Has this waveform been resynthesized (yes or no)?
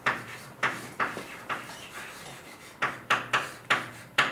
yes